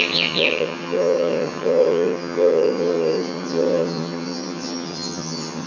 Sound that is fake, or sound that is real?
fake